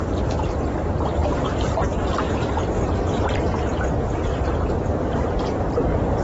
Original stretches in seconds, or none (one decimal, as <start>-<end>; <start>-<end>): 0.0-6.2